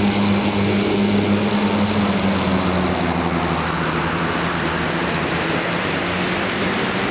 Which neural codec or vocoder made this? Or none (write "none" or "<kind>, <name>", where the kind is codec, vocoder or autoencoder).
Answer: none